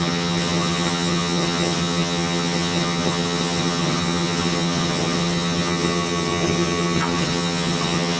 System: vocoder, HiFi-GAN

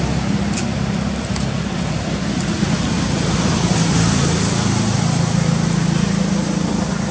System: none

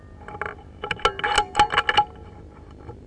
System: none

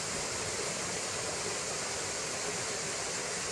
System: none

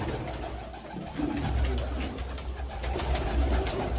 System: none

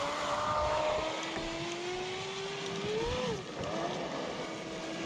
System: none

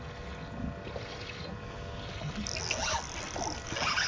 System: none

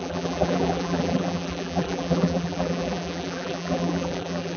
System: vocoder, BigVGAN v2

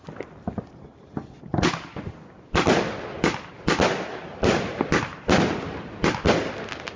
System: none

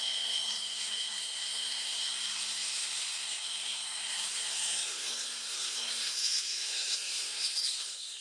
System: codec, SNAC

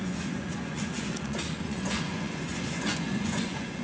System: vocoder, Vocos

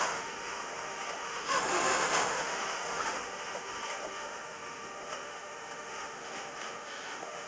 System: autoencoder, DAC-VAE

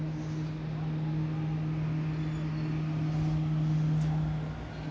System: none